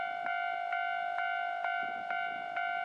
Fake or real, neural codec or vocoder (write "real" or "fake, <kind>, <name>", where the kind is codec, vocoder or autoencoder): real